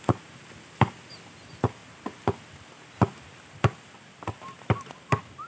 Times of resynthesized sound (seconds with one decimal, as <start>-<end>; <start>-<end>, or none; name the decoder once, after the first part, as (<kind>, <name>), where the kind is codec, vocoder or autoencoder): none